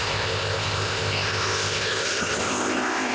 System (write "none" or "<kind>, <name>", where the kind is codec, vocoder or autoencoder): codec, ZipCodec